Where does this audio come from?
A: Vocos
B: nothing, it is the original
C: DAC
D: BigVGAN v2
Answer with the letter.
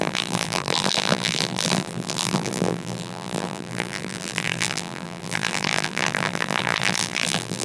D